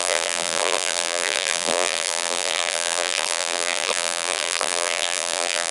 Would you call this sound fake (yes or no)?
yes